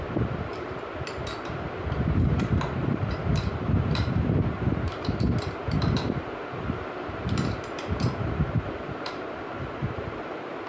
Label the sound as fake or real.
fake